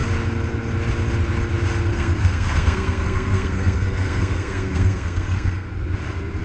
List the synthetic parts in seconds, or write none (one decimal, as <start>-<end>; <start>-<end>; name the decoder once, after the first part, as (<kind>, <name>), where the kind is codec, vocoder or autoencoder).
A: 1.9-5.7 (codec, SNAC)